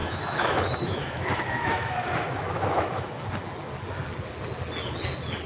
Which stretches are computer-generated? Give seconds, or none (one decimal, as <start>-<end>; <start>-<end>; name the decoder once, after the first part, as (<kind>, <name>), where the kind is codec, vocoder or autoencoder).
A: 0.0-3.1 (autoencoder, DAC-VAE)